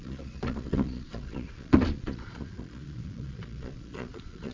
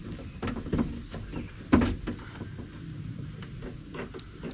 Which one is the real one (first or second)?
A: second